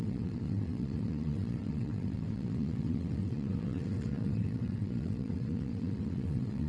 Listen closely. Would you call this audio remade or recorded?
remade